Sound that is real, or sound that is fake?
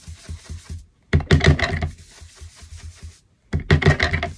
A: real